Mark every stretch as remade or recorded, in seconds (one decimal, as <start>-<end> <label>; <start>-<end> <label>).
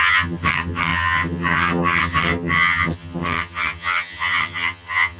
0.0-5.2 remade